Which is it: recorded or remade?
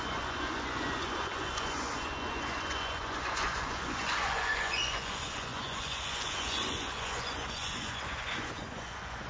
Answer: remade